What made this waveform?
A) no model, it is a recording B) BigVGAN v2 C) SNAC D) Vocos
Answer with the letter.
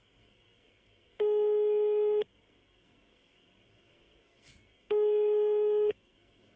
C